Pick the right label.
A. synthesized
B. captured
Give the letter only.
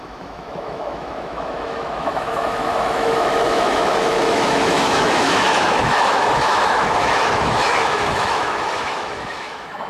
A